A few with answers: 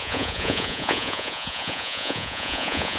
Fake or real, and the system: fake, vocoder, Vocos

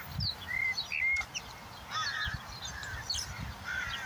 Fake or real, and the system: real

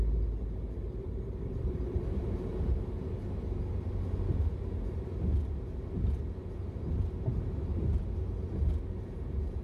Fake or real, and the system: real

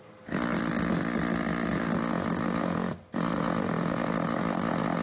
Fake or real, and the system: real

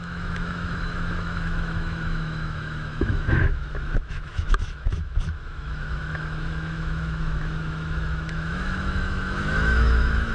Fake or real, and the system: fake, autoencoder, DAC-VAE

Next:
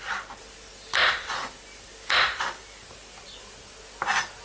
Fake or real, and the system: real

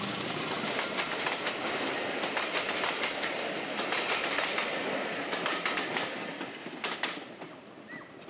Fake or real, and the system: real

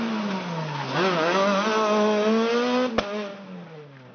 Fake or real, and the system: real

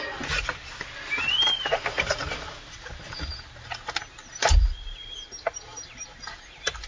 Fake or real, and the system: real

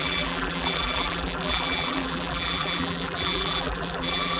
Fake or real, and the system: fake, vocoder, BigVGAN v2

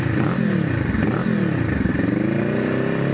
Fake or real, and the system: real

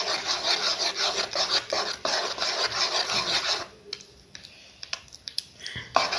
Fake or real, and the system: real